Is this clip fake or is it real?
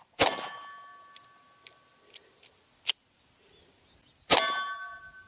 real